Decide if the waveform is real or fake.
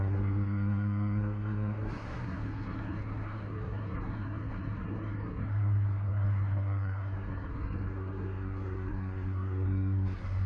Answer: fake